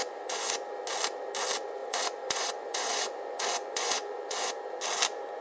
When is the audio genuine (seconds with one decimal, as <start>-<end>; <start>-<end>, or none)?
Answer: 0.5-1.8; 4.5-5.4